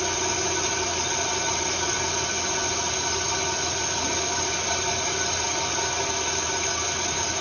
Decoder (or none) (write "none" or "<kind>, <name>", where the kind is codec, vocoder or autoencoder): none